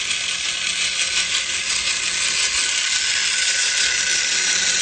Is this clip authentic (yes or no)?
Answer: yes